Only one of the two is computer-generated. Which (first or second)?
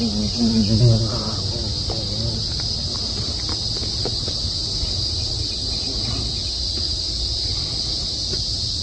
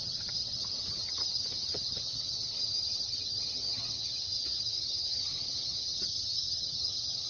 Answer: second